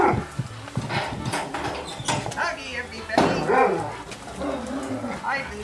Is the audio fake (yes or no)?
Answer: no